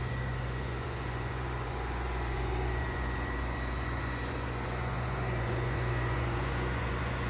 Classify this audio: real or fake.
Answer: fake